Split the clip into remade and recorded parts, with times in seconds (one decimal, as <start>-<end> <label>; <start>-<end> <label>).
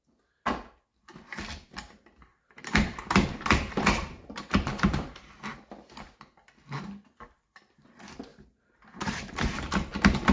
0.0-2.3 recorded; 2.3-5.3 remade; 5.3-8.3 recorded; 8.3-9.3 remade; 9.3-10.3 recorded